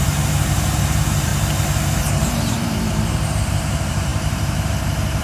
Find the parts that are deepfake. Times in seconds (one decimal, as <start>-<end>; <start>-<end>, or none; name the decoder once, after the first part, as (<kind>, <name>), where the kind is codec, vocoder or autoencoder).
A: 0.0-1.3 (vocoder, BigVGAN v2); 2.0-5.2